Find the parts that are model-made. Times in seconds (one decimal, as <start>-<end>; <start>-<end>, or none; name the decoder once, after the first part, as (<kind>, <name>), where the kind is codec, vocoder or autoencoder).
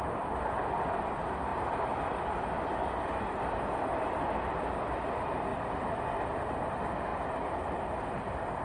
none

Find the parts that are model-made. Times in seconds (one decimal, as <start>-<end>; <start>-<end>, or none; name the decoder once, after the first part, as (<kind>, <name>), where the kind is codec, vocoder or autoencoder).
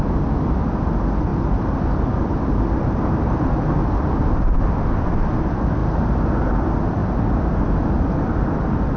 none